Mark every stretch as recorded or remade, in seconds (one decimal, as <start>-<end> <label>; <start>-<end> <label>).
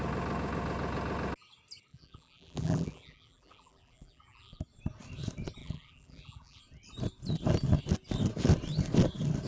0.0-1.9 recorded; 1.9-4.6 remade; 4.6-5.6 recorded; 5.6-6.6 remade; 6.6-9.5 recorded